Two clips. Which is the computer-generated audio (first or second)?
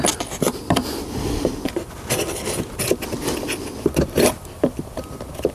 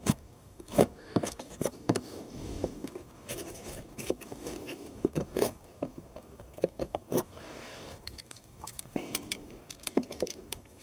second